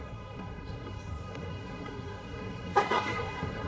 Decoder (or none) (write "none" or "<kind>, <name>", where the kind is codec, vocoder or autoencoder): codec, SNAC